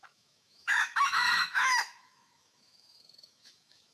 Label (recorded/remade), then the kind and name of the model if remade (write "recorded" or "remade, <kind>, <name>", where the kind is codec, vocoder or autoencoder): remade, autoencoder, DAC-VAE